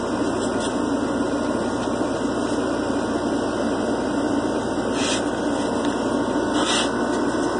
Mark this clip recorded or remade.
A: recorded